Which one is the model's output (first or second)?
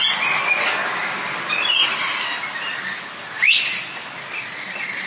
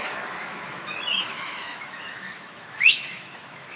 second